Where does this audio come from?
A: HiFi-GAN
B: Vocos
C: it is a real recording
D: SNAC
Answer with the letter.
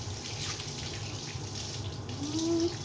C